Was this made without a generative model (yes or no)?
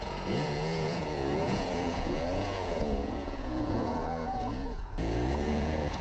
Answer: no